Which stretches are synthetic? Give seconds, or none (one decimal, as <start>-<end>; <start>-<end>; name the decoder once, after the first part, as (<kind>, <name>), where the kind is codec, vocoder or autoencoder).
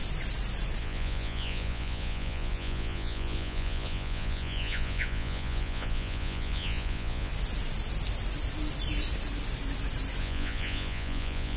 0.8-7.3 (vocoder, Vocos); 10.2-11.6